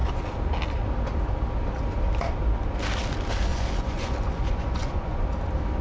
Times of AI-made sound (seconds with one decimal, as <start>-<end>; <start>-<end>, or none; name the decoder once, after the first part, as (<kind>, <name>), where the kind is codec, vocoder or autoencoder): 3.5-5.2 (vocoder, Vocos)